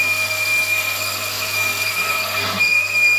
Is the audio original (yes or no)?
no